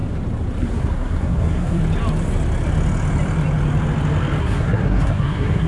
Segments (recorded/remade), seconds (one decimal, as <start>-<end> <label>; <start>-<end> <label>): 0.0-0.6 recorded; 0.6-1.8 remade; 1.8-4.4 recorded; 4.4-5.7 remade